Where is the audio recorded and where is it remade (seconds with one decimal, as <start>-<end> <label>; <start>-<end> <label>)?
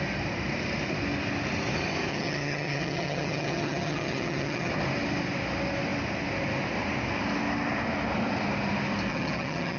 0.0-2.1 recorded; 2.1-4.7 remade; 4.7-9.1 recorded; 9.1-9.8 remade